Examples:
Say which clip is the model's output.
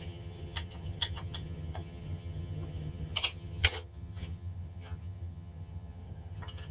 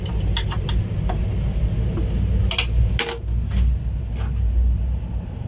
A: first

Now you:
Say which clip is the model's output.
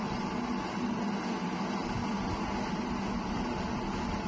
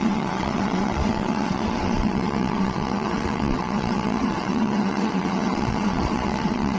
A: second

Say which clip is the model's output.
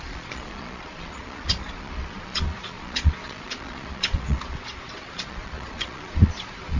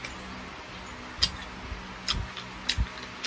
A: first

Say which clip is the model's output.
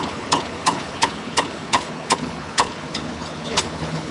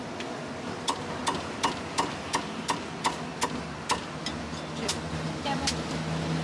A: first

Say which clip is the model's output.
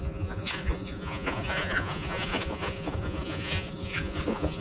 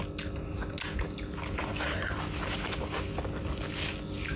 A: first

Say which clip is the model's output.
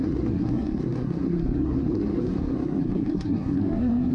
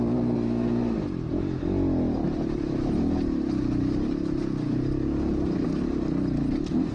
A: first